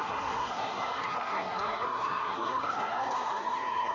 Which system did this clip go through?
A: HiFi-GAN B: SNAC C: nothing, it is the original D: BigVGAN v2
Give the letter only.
B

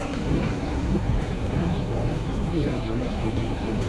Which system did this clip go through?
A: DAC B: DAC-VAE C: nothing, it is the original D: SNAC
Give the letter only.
D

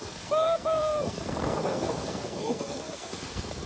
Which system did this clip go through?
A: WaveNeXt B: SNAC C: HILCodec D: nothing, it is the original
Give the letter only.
B